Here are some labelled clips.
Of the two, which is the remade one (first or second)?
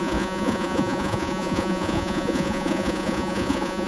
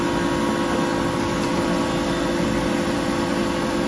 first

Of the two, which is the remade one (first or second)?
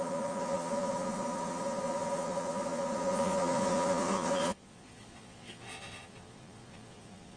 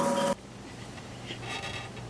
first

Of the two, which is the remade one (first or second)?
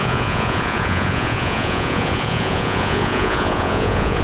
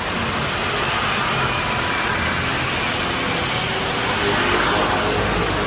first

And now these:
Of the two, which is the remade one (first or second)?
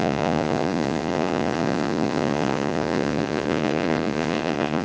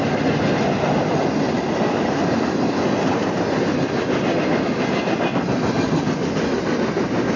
first